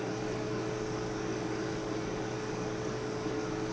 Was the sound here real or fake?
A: fake